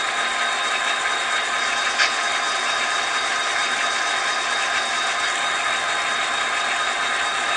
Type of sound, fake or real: real